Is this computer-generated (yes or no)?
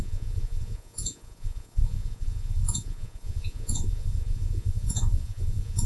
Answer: yes